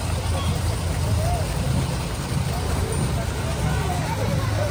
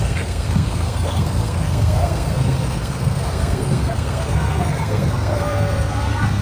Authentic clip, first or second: first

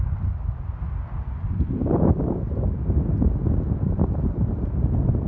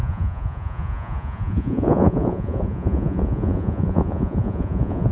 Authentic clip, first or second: first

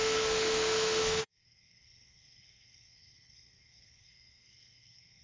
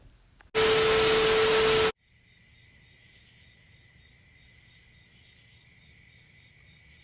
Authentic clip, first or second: second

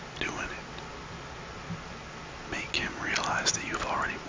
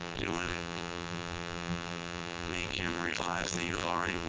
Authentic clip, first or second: first